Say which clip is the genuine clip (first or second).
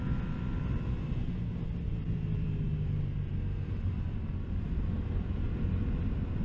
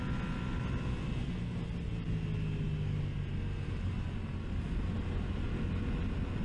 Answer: second